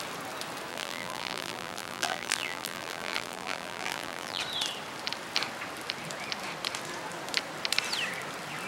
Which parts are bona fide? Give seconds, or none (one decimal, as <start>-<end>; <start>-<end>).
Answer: 0.0-0.7; 4.4-8.7